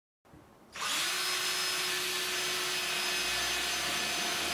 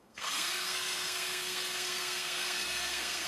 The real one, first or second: first